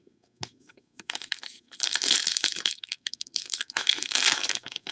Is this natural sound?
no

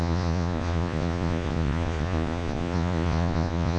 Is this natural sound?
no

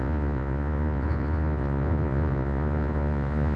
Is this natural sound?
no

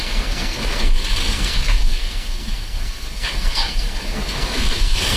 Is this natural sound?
no